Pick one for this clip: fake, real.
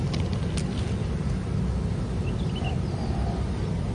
fake